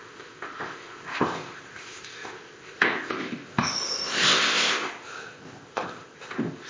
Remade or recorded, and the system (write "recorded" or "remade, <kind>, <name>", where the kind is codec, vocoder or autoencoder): remade, codec, ZipCodec